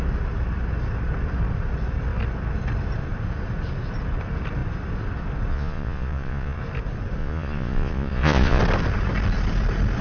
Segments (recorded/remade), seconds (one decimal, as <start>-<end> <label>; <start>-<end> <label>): 0.0-5.5 recorded; 5.5-6.6 remade; 6.6-7.2 recorded; 7.2-8.6 remade; 8.6-10.0 recorded